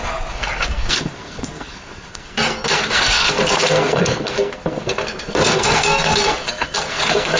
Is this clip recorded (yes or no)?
no